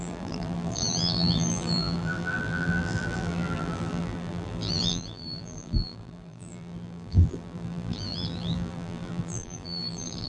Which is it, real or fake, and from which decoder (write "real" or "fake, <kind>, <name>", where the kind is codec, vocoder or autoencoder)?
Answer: fake, vocoder, BigVGAN v2